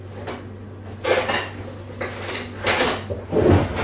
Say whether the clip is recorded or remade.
recorded